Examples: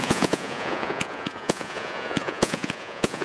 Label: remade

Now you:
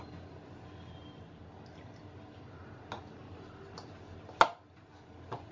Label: recorded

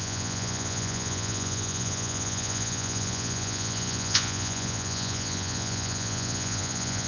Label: remade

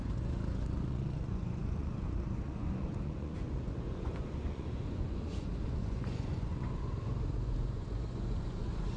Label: remade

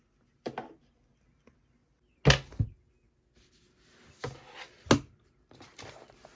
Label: recorded